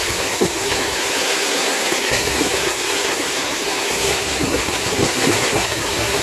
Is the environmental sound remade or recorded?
remade